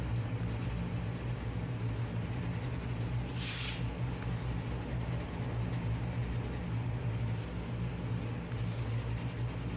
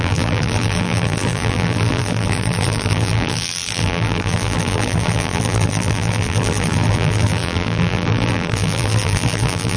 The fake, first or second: second